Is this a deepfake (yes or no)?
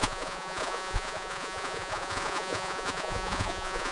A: yes